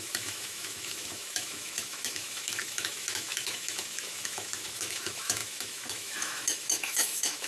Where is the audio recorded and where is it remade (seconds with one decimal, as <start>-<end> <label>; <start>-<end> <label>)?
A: 0.0-7.5 remade